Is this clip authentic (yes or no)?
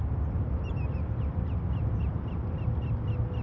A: yes